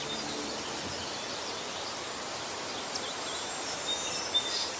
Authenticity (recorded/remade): remade